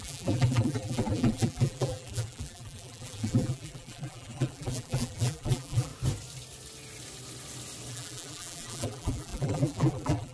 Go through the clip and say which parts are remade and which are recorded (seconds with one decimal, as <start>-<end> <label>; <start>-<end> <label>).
0.0-5.9 remade; 5.9-7.9 recorded; 7.9-10.3 remade